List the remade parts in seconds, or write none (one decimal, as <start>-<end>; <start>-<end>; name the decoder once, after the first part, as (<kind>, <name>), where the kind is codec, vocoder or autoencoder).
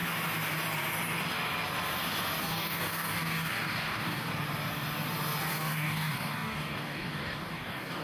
2.4-4.3 (codec, DAC); 5.5-8.0